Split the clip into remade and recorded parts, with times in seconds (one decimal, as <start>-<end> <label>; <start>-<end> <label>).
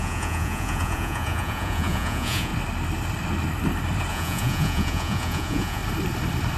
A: 0.0-2.5 remade; 2.5-4.1 recorded; 4.1-5.8 remade; 5.8-6.6 recorded